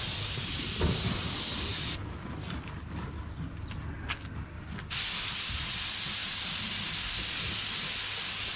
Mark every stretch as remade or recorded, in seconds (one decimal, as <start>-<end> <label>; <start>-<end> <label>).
0.0-8.6 recorded